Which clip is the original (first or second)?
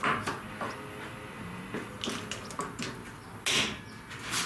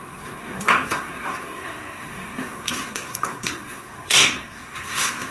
first